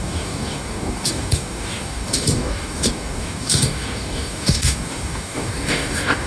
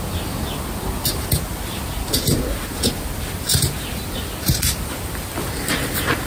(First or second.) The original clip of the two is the second